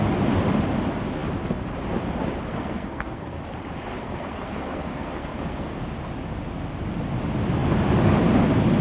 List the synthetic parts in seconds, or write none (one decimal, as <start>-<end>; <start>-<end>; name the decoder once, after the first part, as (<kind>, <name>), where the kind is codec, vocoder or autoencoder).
2.5-3.4 (codec, SNAC); 4.0-5.8